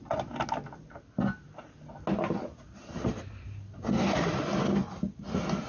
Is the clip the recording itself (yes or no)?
yes